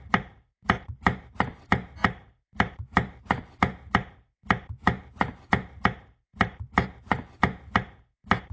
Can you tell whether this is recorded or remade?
remade